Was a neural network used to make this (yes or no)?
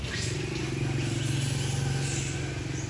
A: no